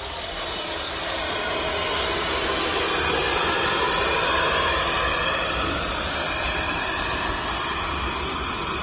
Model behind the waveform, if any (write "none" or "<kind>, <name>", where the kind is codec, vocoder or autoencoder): none